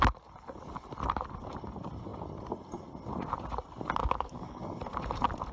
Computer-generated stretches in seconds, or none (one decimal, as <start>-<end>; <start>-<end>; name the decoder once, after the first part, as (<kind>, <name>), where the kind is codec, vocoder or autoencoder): 4.0-4.6 (codec, DAC)